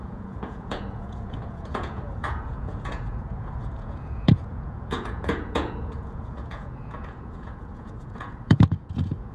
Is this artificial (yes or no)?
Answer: yes